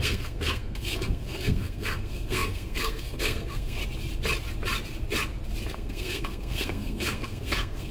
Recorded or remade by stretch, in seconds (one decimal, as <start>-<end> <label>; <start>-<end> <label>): 0.0-3.8 remade; 3.8-5.7 recorded; 5.7-7.9 remade